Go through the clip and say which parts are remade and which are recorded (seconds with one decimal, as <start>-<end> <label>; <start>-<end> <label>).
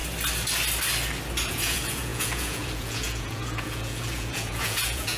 0.0-1.5 recorded; 1.5-5.2 remade